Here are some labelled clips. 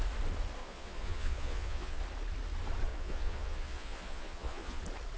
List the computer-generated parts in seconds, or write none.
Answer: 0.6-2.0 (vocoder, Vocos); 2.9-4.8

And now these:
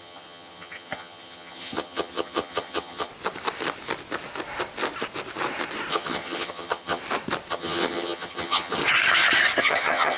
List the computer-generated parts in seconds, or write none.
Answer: 0.0-3.1 (vocoder, HiFi-GAN); 5.9-7.0; 7.5-8.8; 9.6-10.2

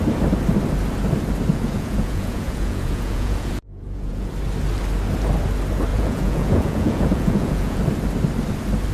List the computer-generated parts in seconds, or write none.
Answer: 1.5-4.3 (vocoder, Vocos); 5.9-7.8

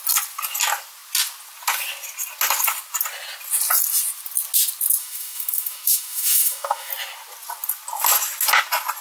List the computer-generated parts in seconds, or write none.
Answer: 5.0-6.9 (autoencoder, DAC-VAE)

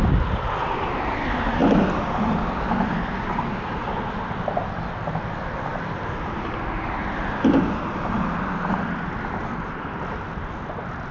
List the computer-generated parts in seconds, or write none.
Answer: none

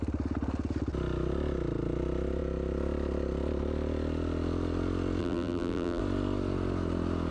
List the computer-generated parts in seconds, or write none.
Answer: 5.2-6.0 (vocoder, BigVGAN v2)

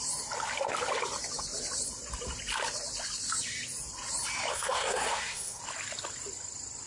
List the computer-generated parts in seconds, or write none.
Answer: 4.5-5.6 (codec, SNAC)